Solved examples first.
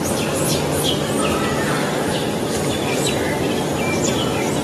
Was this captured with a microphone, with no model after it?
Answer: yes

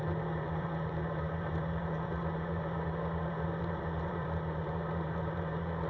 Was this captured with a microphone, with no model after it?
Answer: no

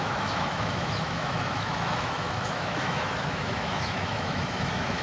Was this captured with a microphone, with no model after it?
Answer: no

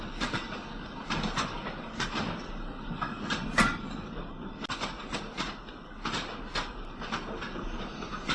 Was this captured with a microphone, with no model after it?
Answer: yes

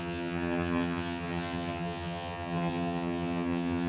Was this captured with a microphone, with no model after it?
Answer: no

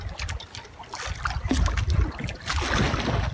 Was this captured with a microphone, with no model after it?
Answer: yes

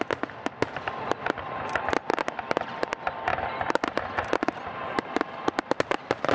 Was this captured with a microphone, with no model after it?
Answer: yes